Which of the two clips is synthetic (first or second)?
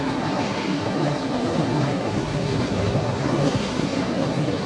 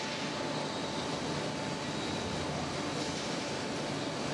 first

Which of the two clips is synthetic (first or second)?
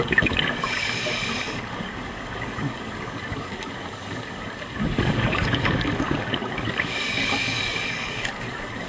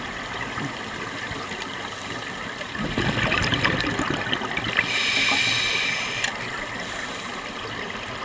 first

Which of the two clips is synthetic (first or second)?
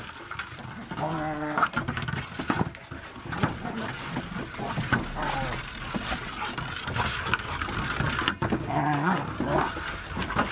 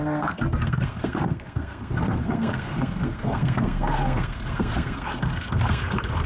second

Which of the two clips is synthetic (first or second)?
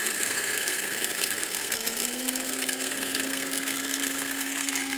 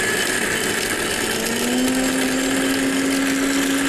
first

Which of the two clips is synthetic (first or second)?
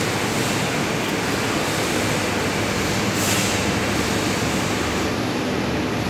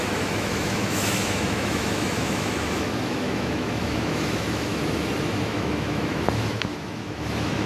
second